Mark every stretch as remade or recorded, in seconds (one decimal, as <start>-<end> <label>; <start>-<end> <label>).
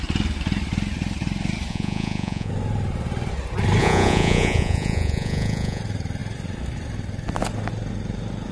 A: 0.0-1.7 recorded; 1.7-2.5 remade; 2.5-3.8 recorded; 3.8-5.8 remade; 5.8-8.5 recorded